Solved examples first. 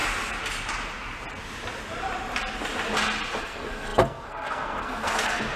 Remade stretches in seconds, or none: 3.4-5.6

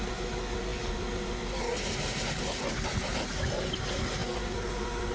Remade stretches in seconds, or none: none

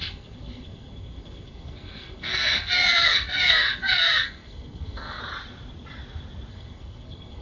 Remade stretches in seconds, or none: 0.0-5.2; 6.5-7.4

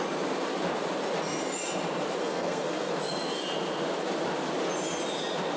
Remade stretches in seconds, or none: 2.2-2.9